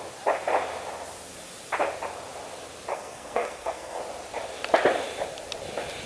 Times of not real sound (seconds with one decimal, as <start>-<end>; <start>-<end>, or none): 2.9-4.0